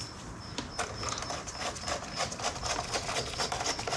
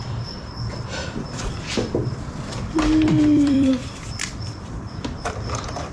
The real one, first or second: first